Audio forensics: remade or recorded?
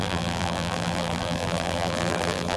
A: remade